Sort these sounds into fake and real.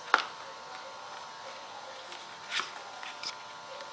real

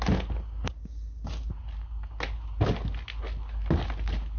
real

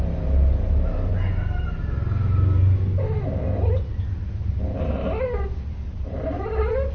real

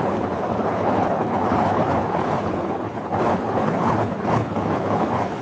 fake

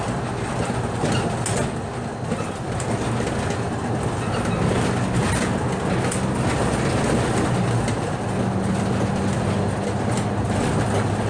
real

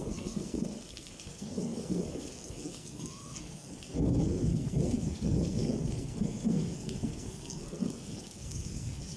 fake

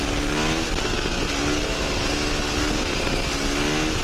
real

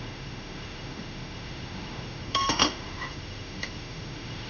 fake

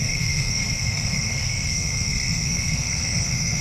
fake